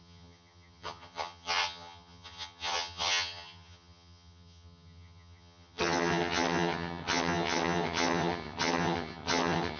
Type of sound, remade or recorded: remade